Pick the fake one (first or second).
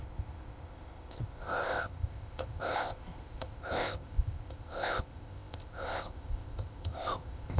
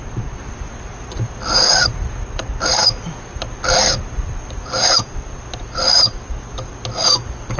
first